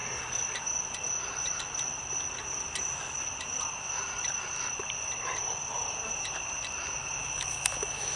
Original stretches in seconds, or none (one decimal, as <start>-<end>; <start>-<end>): 0.0-7.2